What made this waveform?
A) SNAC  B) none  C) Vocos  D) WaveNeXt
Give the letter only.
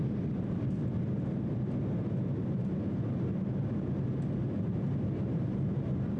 B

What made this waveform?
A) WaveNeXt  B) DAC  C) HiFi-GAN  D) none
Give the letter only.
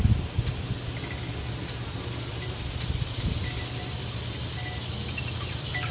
D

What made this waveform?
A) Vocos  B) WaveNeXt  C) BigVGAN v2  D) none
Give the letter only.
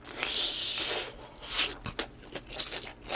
D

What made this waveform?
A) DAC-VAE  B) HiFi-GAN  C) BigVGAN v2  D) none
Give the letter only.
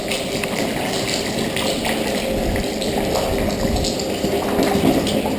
D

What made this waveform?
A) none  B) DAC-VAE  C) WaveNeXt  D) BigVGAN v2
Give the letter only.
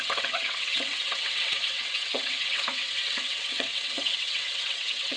C